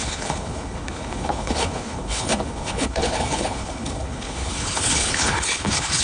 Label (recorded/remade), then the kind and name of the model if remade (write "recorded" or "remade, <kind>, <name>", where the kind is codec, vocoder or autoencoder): remade, codec, HILCodec